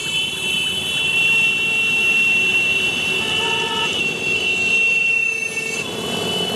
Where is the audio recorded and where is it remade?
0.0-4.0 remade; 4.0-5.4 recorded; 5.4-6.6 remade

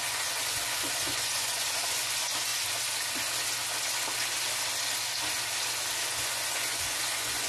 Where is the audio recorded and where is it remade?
0.0-2.5 remade; 2.5-6.1 recorded; 6.1-7.5 remade

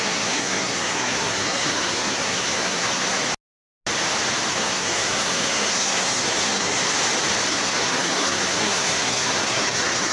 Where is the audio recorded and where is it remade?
0.0-3.2 remade; 3.2-4.5 recorded; 4.5-6.8 remade; 6.8-7.5 recorded; 7.5-10.1 remade

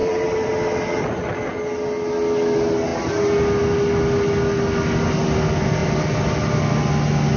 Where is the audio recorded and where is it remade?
0.0-0.5 remade; 0.5-7.4 recorded